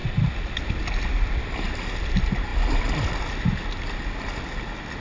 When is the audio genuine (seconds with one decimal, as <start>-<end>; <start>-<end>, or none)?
0.0-5.0